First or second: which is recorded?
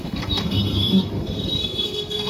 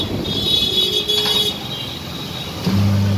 second